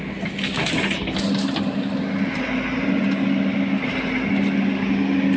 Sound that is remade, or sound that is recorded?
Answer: recorded